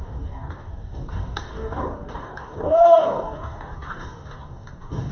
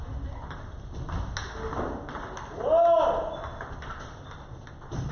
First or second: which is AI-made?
first